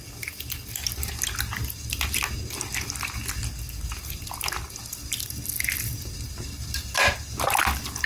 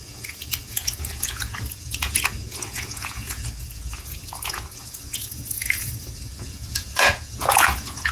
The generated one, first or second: second